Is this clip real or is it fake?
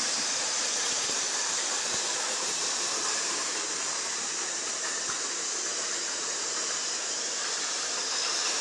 fake